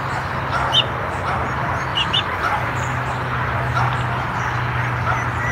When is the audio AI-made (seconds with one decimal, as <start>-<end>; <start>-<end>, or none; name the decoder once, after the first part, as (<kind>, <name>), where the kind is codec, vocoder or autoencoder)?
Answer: 1.9-2.7 (vocoder, BigVGAN v2)